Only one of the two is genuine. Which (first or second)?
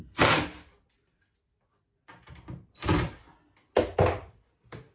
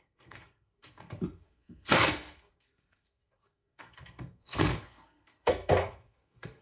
first